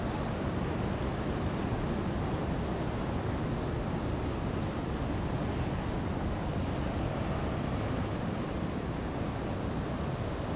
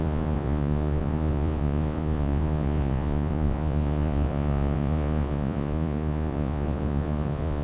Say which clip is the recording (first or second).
first